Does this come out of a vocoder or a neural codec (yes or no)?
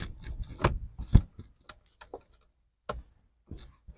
no